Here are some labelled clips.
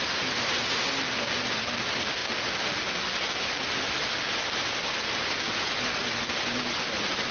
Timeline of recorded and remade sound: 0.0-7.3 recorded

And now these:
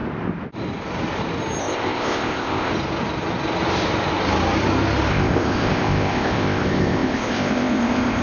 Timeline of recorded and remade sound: 0.0-1.6 recorded; 1.6-2.7 remade; 2.7-5.1 recorded; 5.1-8.2 remade

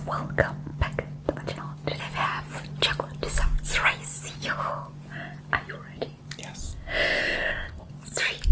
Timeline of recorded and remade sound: 0.0-6.6 recorded; 6.6-7.9 remade; 7.9-8.5 recorded